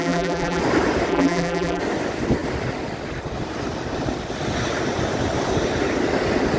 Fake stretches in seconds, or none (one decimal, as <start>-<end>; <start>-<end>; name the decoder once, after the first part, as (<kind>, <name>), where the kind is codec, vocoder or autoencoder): 0.0-0.6 (vocoder, BigVGAN v2); 1.1-1.8